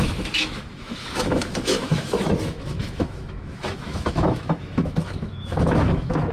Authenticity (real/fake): fake